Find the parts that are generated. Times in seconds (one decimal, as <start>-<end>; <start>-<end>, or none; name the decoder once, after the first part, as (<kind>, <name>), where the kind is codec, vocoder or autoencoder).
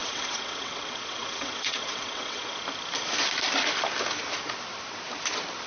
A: 0.0-2.6 (vocoder, WaveNeXt)